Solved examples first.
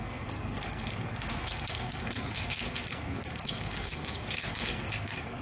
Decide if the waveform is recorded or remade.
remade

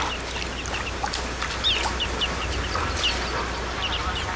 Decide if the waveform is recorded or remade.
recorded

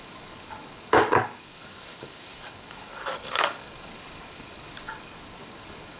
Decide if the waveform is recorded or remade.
remade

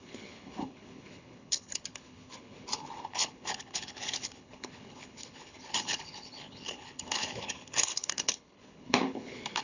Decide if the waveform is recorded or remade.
remade